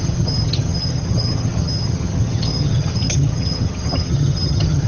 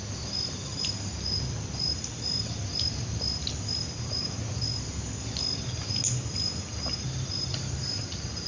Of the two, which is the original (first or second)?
second